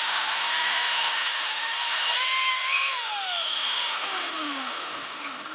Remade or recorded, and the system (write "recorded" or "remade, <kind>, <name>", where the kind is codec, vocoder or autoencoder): remade, autoencoder, DAC-VAE